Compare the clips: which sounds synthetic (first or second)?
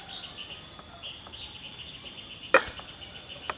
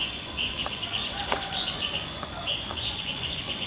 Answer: second